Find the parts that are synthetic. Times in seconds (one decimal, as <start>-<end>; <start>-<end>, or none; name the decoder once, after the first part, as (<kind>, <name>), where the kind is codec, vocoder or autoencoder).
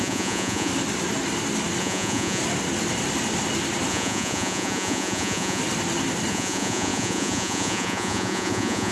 0.0-0.7 (vocoder, Vocos); 1.8-2.4; 3.9-5.6; 6.3-8.9